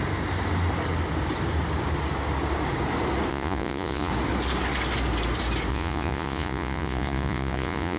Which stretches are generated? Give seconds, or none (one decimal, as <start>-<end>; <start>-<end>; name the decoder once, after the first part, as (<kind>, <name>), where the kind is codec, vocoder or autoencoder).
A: 3.3-4.1 (vocoder, Vocos); 5.7-8.0